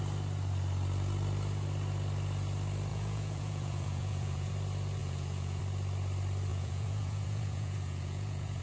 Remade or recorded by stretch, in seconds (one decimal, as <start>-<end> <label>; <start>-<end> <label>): 0.0-2.9 recorded; 2.9-4.5 remade; 4.5-5.0 recorded; 5.0-5.6 remade; 5.6-6.5 recorded; 6.5-8.6 remade